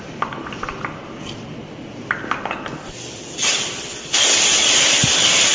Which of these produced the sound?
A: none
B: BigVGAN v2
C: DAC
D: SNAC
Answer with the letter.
B